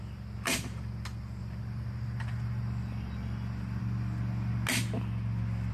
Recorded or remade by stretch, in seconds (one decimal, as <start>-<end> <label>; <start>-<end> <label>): 0.0-1.4 recorded; 1.4-3.8 remade; 3.8-5.7 recorded